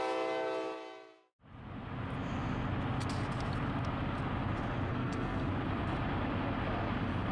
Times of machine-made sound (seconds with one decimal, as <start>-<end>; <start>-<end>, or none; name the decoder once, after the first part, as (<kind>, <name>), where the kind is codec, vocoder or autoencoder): 4.9-5.5 (codec, SNAC)